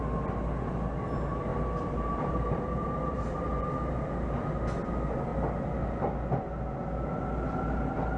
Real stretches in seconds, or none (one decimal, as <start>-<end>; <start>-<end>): 0.0-1.5; 4.0-8.2